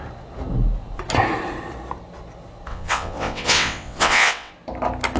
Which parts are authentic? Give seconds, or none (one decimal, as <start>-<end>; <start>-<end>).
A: 0.0-2.7; 4.5-5.2